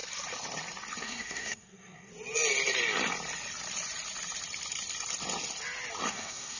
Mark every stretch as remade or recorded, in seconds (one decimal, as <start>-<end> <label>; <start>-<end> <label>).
0.0-1.0 recorded; 1.0-2.1 remade; 2.1-6.1 recorded; 6.1-6.6 remade